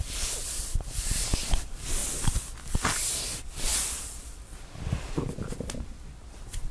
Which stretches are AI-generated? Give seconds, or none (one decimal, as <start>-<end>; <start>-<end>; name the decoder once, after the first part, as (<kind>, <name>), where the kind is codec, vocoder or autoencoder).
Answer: 0.0-2.0 (vocoder, BigVGAN v2); 3.2-6.7